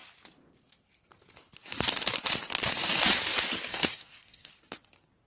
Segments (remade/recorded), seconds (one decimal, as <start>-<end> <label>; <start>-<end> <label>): 0.0-3.7 recorded; 3.7-4.5 remade; 4.5-5.3 recorded